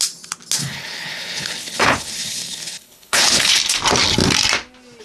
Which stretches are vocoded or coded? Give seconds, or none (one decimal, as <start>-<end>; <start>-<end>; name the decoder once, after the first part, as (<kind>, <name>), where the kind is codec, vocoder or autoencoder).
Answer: 0.6-3.6 (codec, HILCodec)